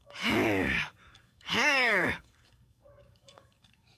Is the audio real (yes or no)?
no